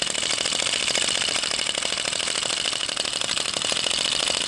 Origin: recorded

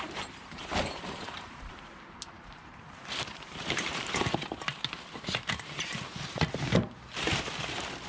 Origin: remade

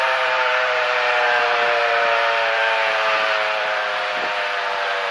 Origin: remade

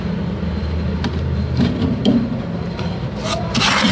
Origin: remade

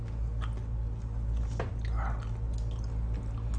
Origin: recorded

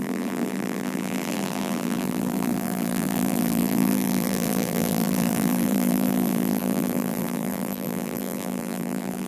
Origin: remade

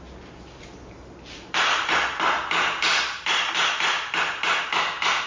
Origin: recorded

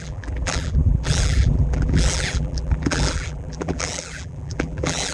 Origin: remade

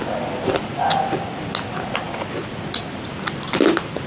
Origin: recorded